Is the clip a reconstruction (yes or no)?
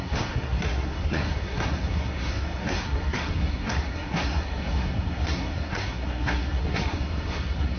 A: yes